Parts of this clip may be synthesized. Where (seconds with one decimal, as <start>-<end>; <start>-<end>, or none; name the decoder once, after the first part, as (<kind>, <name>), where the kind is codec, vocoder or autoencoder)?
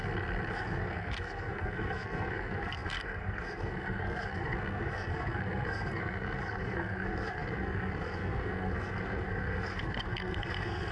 0.5-10.9 (codec, SNAC)